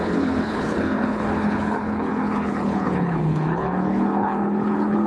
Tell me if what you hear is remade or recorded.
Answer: remade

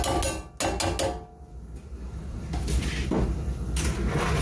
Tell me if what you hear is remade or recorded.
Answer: recorded